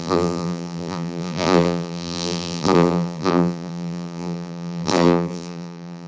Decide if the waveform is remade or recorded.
remade